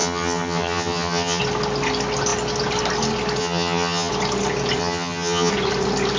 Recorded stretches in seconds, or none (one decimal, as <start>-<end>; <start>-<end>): 1.4-3.4; 4.1-4.8; 5.5-6.2